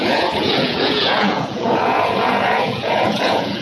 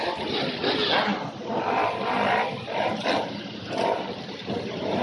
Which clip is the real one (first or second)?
second